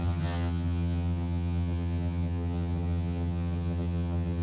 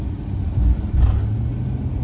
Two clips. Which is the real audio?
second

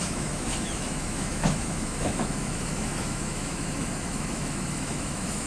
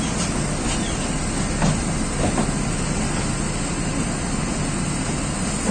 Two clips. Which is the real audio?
second